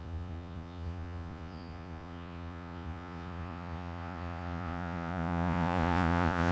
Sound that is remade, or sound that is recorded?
remade